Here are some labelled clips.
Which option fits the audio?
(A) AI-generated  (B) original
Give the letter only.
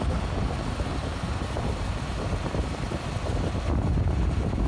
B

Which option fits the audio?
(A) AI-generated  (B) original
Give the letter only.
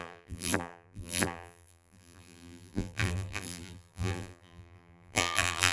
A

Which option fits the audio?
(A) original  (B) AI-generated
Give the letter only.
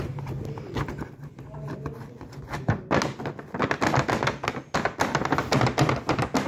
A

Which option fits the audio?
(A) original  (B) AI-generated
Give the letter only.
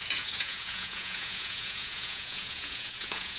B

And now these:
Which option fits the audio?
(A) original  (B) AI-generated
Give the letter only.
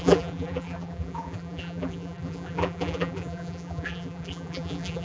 B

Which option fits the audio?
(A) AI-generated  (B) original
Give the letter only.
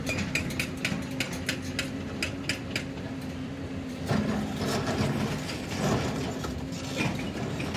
B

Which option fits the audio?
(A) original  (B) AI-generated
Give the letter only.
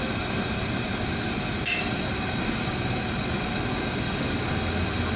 A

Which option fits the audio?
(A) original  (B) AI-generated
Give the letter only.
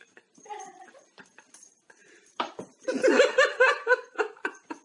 B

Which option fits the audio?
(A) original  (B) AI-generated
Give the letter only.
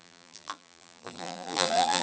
B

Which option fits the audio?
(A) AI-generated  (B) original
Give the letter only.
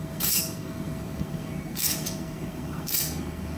A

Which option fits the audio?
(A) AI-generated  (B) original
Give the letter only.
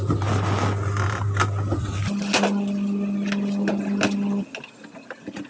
B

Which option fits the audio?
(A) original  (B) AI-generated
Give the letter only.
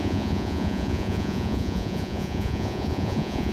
B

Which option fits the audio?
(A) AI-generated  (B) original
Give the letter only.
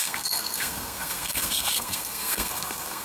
A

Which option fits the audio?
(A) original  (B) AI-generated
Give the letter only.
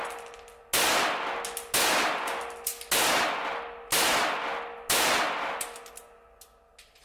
A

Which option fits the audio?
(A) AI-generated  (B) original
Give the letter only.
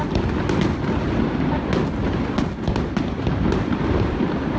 B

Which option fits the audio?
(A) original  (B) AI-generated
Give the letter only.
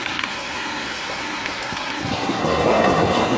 B